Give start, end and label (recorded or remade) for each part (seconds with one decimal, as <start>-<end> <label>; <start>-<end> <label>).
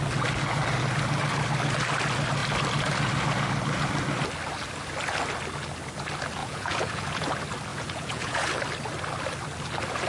0.0-6.4 recorded; 6.4-7.3 remade; 7.3-7.7 recorded; 7.7-8.5 remade; 8.5-10.1 recorded